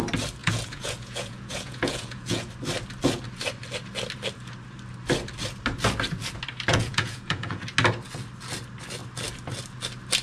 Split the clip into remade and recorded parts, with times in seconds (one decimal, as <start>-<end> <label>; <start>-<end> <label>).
0.0-0.4 recorded; 0.4-2.5 remade; 2.5-6.7 recorded; 6.7-7.6 remade; 7.6-10.2 recorded